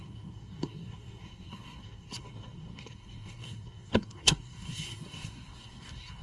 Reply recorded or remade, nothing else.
remade